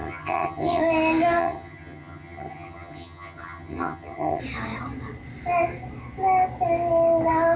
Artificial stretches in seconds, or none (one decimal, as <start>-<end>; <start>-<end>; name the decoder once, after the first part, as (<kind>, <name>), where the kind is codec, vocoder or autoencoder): 0.0-0.8 (vocoder, HiFi-GAN); 1.4-4.4